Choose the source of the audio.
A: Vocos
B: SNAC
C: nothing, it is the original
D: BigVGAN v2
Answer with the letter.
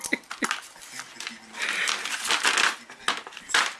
C